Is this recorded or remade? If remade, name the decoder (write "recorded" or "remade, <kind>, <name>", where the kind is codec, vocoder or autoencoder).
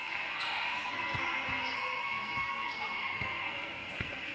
remade, codec, SNAC